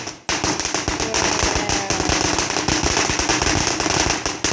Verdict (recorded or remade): recorded